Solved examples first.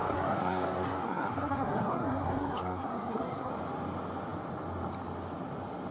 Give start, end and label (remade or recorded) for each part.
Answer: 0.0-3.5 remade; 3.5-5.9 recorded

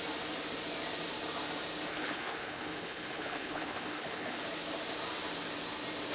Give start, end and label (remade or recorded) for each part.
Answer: 0.0-1.9 recorded; 1.9-4.4 remade; 4.4-6.1 recorded